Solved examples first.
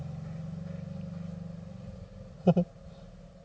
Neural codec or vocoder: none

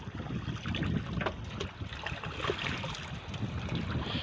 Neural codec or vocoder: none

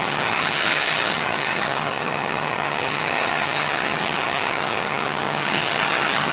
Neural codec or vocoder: vocoder, HiFi-GAN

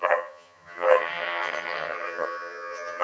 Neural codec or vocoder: vocoder, HiFi-GAN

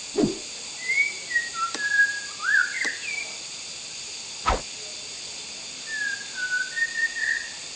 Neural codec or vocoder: none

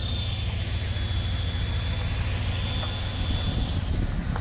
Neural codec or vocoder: none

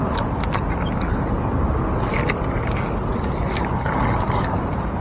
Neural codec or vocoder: none